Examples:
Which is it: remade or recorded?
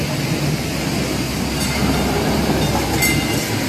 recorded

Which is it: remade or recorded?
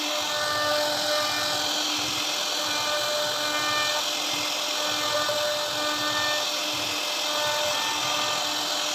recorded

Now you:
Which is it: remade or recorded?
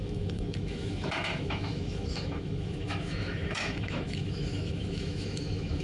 remade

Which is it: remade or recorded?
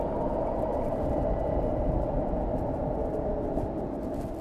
recorded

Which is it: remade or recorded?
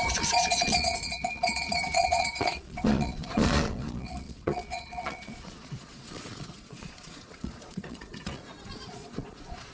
remade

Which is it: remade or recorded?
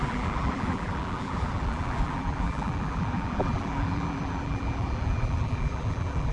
remade